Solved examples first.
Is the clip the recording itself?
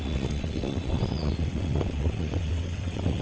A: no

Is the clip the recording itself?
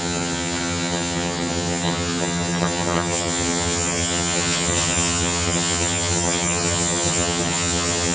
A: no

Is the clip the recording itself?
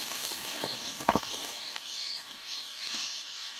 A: no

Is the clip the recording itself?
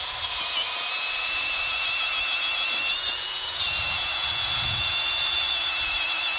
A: no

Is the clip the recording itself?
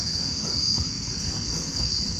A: no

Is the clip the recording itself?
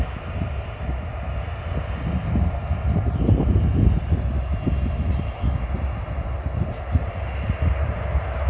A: yes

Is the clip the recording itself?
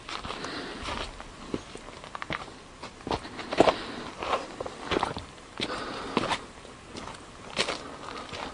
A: yes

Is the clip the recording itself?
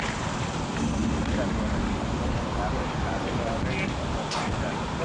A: yes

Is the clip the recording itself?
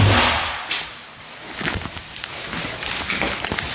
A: yes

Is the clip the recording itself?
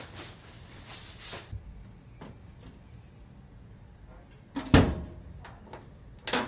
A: yes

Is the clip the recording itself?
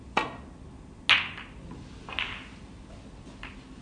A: yes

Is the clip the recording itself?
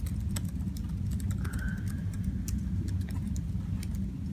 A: yes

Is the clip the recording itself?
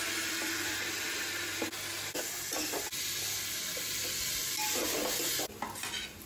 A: yes